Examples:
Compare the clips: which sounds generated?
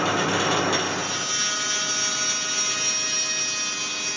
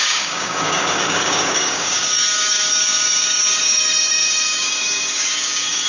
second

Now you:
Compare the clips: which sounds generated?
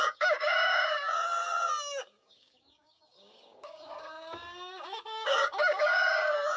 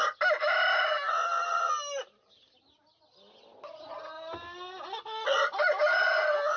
first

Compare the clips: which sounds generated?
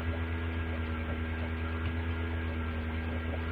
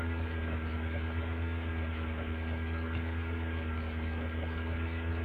second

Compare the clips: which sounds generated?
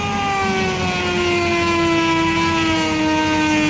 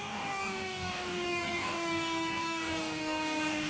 second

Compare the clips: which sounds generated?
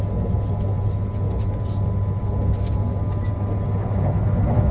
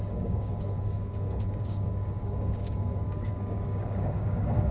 second